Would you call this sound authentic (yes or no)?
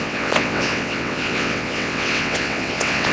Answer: no